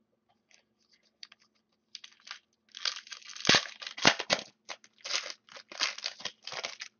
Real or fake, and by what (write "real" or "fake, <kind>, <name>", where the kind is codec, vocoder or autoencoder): real